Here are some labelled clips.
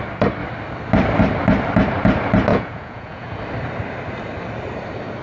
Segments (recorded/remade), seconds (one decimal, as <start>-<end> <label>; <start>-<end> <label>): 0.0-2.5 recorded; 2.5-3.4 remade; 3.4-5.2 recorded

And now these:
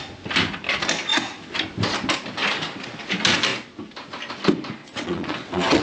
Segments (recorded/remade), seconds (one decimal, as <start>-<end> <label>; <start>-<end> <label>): 0.0-4.8 recorded; 4.8-5.8 remade

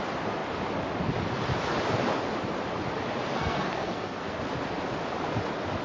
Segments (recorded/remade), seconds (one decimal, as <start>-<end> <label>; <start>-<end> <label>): 0.0-3.3 recorded; 3.3-4.4 remade; 4.4-5.8 recorded